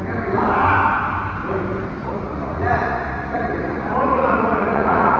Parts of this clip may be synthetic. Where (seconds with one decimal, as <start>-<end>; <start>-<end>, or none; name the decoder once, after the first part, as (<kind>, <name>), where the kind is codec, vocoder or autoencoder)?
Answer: 2.0-5.2 (vocoder, Vocos)